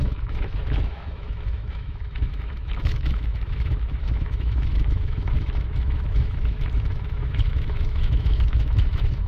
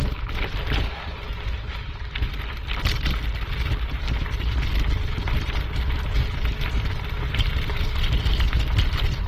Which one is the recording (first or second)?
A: second